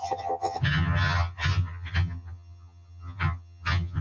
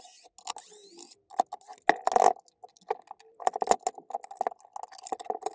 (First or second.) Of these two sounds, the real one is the second